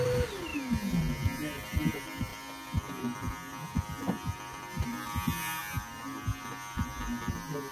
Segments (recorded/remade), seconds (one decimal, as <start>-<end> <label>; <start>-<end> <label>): 0.0-7.7 recorded